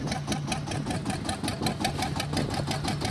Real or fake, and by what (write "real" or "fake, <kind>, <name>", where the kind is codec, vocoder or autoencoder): real